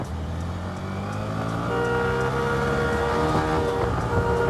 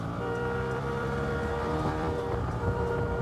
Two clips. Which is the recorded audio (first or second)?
first